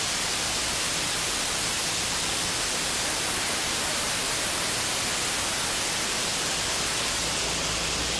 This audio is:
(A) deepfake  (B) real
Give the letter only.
B